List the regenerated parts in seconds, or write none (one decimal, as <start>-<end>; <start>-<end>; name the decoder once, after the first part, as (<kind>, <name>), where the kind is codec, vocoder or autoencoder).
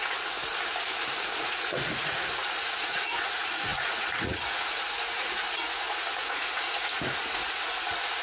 0.0-0.4 (vocoder, Vocos); 1.5-8.2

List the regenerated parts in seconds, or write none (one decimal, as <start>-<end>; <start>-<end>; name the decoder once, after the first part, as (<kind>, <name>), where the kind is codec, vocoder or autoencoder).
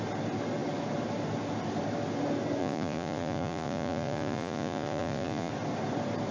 2.6-5.5 (vocoder, Vocos)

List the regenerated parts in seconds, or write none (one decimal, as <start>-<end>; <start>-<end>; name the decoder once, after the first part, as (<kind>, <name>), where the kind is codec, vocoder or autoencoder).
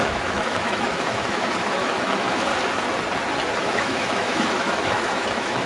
0.0-2.5 (autoencoder, DAC-VAE); 3.6-5.7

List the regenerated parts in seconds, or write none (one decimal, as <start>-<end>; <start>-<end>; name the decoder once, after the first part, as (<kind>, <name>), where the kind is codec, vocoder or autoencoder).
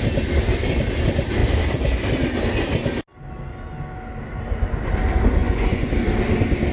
5.4-5.9 (vocoder, Vocos)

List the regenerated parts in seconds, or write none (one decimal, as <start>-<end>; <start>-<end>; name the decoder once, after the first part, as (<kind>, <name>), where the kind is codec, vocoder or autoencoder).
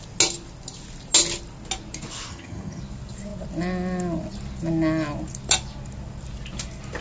2.3-2.8 (vocoder, HiFi-GAN)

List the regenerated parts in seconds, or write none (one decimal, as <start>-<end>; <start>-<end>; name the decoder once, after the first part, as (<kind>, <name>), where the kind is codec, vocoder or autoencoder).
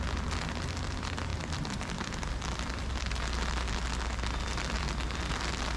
1.3-3.7 (vocoder, BigVGAN v2); 4.5-5.2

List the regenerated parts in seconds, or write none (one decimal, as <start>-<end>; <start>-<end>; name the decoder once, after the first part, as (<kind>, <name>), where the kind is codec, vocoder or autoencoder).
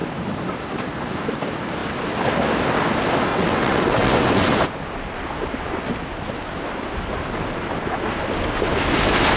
3.3-4.6 (vocoder, WaveNeXt)